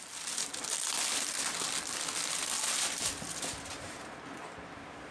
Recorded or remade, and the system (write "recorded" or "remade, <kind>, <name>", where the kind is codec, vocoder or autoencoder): recorded